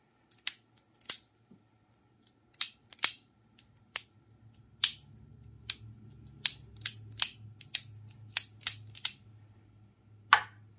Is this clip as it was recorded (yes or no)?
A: yes